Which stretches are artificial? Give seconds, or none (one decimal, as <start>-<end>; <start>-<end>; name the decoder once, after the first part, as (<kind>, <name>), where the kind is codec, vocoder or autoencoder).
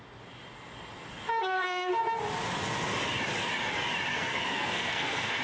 1.4-2.0 (codec, SNAC); 4.1-5.4